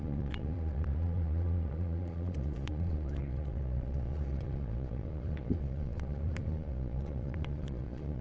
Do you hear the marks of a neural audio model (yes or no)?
yes